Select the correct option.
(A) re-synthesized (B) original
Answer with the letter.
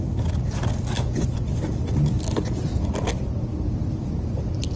B